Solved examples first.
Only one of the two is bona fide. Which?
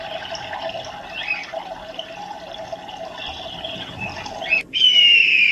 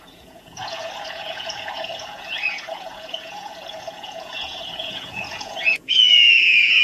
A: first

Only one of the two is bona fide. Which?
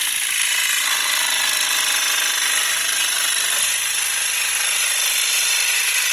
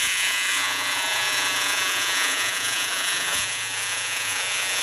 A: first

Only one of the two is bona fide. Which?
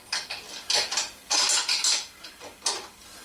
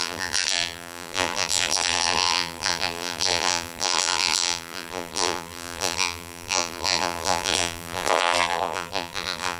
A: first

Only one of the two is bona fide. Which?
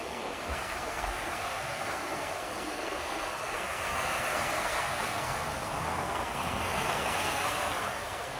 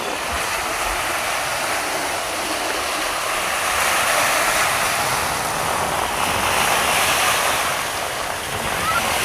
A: second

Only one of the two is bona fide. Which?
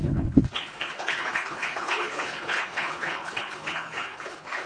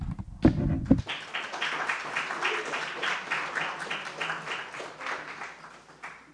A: second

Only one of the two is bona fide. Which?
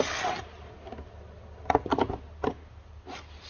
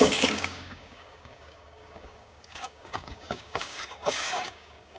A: first